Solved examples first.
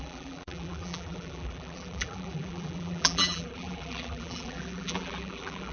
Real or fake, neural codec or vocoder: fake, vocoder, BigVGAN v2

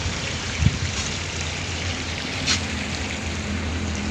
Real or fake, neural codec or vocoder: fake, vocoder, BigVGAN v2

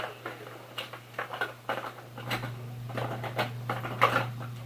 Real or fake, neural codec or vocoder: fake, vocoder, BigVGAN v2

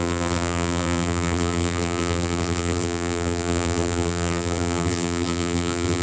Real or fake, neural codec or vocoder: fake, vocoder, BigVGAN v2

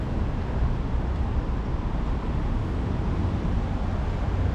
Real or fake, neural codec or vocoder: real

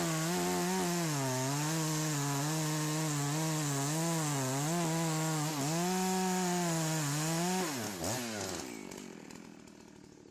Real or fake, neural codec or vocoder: real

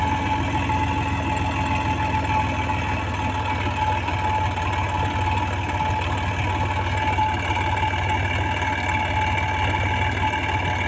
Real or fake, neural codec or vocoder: real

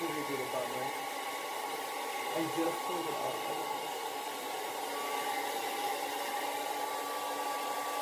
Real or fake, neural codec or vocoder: real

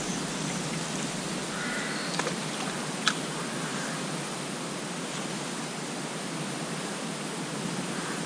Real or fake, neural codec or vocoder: real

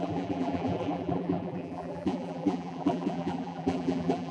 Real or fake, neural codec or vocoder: fake, vocoder, BigVGAN v2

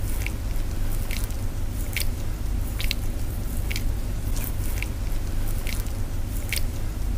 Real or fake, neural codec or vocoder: real